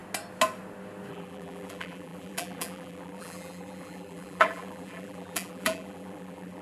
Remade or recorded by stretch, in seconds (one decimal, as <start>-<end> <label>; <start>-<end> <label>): 0.0-1.1 recorded; 1.1-6.6 remade